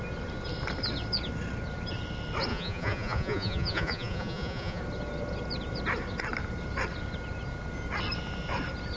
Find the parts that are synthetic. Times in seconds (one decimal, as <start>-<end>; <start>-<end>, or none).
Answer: 2.5-4.8